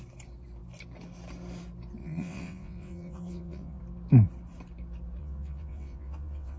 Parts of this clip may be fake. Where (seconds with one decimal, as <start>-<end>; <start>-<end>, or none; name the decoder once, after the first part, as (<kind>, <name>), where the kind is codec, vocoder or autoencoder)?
2.0-3.8 (vocoder, WaveNeXt); 5.2-6.6

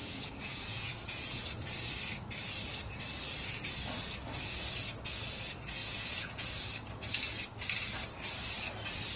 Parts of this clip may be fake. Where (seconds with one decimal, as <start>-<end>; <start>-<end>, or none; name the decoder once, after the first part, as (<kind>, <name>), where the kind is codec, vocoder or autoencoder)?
0.0-1.4 (vocoder, Vocos); 5.8-6.5

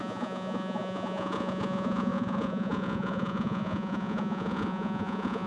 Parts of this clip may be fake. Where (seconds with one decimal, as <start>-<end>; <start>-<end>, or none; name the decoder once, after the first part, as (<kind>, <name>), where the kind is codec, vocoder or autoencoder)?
0.0-5.5 (vocoder, Vocos)

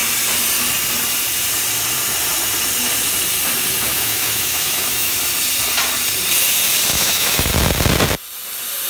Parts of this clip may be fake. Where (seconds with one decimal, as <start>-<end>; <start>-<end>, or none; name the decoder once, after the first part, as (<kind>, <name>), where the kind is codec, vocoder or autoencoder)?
3.9-5.2 (autoencoder, DAC-VAE); 6.9-7.5